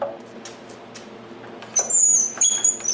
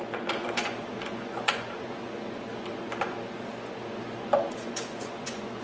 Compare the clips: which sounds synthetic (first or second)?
second